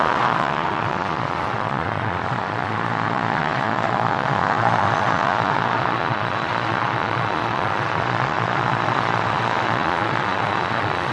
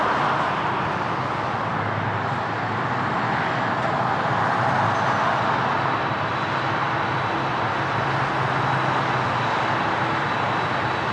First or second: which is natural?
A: second